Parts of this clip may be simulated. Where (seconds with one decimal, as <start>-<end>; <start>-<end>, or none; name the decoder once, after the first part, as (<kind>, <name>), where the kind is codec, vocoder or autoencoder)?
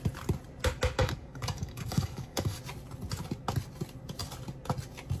1.0-2.6 (codec, DAC)